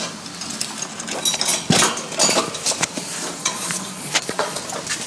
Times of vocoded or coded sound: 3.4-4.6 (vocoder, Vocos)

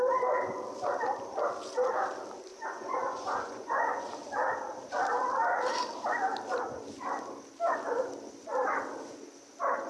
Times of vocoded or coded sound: 2.5-4.1 (vocoder, Vocos)

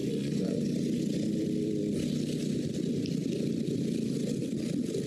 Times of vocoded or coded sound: 0.0-0.6 (vocoder, Vocos)

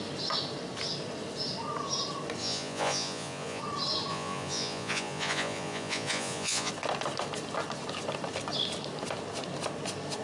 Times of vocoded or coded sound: 2.4-3.6 (vocoder, Vocos); 4.1-6.7

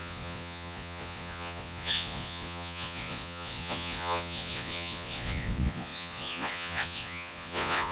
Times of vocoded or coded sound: 0.0-7.9 (vocoder, Vocos)

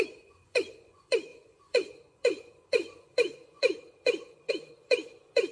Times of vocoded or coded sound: 0.0-5.5 (vocoder, Vocos)